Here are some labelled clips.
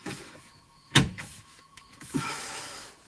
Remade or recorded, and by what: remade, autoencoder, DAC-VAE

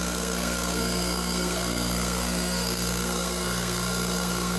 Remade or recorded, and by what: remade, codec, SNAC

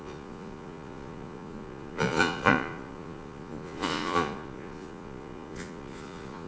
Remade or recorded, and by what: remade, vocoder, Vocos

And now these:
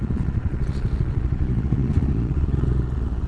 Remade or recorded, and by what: remade, vocoder, Vocos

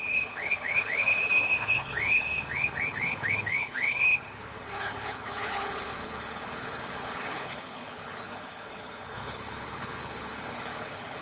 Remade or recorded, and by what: remade, codec, HILCodec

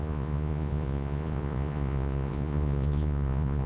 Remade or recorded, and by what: remade, vocoder, Vocos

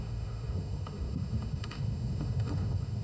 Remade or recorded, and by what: remade, autoencoder, DAC-VAE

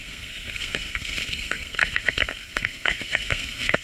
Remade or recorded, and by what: remade, codec, SNAC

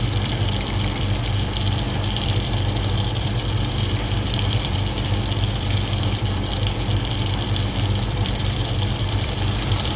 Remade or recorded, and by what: remade, vocoder, BigVGAN v2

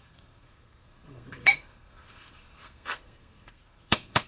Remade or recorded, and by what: remade, codec, SNAC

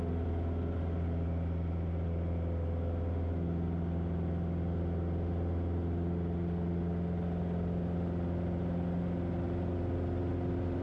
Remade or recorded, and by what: recorded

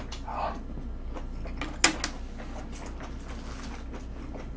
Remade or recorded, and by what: recorded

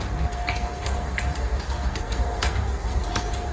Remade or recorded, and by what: remade, codec, SNAC